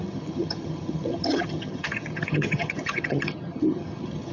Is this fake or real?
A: fake